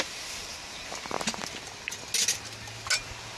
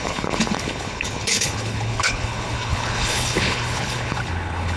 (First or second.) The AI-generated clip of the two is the second